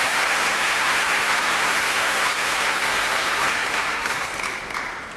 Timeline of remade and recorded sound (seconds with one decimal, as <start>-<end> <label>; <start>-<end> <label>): 0.0-4.3 remade; 4.3-5.2 recorded